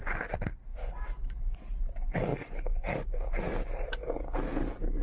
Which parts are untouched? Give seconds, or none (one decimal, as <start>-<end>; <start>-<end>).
0.0-0.7; 1.4-2.3; 3.3-5.0